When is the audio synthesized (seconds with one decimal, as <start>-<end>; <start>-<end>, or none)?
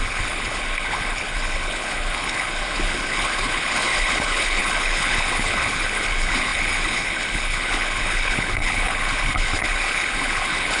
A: 0.0-10.8